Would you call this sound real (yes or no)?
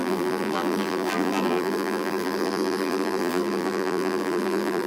no